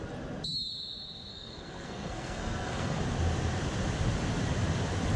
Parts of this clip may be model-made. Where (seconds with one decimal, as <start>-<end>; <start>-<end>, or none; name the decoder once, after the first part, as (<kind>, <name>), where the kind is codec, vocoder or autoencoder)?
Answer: 1.3-3.0 (codec, SNAC)